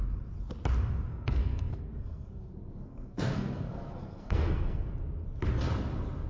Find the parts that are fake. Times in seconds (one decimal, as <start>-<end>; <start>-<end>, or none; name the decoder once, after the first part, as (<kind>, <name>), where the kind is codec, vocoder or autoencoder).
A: 1.1-4.9 (codec, SNAC)